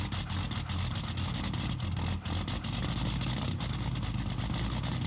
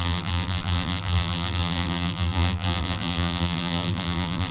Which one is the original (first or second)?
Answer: first